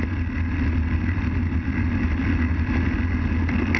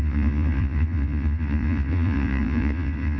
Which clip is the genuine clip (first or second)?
first